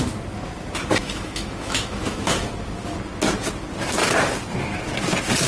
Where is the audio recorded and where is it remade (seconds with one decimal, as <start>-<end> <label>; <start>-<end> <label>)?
0.0-1.0 recorded; 1.0-2.5 remade; 2.5-5.5 recorded